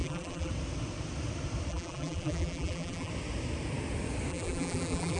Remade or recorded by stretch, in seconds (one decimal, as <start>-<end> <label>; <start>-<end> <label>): 0.0-0.5 remade; 0.5-1.7 recorded; 1.7-3.1 remade; 3.1-4.3 recorded; 4.3-5.2 remade

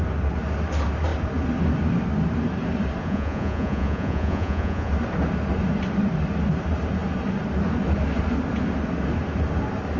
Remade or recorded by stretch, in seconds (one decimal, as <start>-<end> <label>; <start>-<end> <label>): 0.0-3.0 recorded; 3.0-4.9 remade; 4.9-10.0 recorded

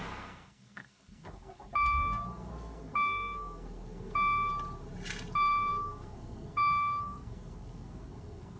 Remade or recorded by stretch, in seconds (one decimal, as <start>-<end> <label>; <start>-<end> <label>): 0.0-4.5 remade; 4.5-5.3 recorded; 5.3-8.6 remade

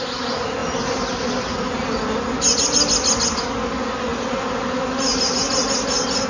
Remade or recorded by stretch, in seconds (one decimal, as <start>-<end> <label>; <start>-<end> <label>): 0.0-6.3 recorded